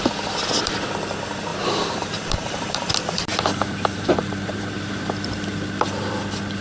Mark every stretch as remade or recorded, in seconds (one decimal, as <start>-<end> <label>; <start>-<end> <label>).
0.0-1.5 recorded; 1.5-2.9 remade; 2.9-3.3 recorded; 3.3-4.6 remade; 4.6-6.6 recorded